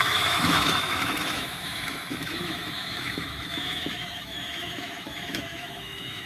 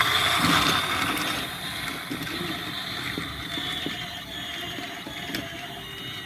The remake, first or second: first